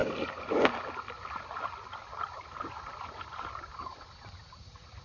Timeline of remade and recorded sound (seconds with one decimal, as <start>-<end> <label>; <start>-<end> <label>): 0.0-5.0 recorded